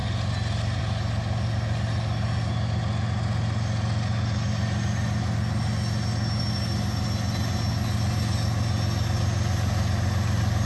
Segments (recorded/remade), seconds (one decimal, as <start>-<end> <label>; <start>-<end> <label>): 0.0-10.7 recorded